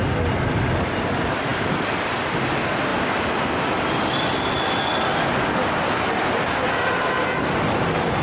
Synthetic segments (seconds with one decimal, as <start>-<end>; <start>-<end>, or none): none